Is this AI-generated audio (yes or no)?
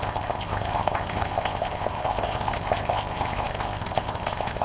yes